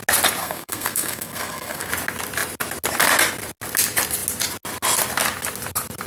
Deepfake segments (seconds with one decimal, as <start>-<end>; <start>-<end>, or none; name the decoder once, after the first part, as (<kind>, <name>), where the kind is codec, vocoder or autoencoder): 0.4-1.9 (codec, SNAC)